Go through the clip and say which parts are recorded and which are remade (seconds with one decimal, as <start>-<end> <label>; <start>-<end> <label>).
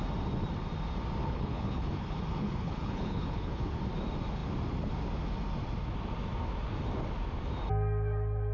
0.0-1.2 recorded; 1.2-3.7 remade; 3.7-8.5 recorded